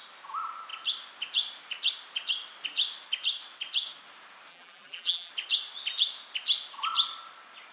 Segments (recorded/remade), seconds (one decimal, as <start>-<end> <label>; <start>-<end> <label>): 0.0-4.5 recorded; 4.5-5.3 remade; 5.3-7.7 recorded